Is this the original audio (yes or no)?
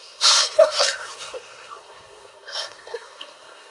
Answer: no